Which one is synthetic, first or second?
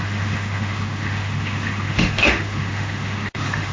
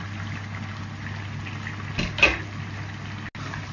first